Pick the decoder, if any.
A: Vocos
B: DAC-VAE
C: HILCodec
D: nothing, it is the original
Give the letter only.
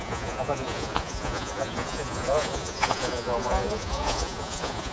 A